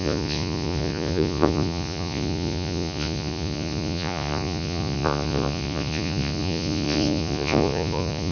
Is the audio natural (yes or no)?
no